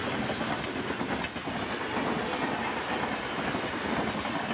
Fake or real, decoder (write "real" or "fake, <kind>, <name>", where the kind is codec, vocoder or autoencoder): real